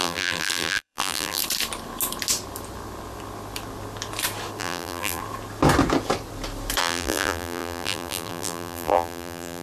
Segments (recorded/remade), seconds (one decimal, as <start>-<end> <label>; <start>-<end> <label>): 0.0-1.4 remade; 1.4-4.6 recorded; 4.6-5.2 remade; 5.2-6.8 recorded; 6.8-9.6 remade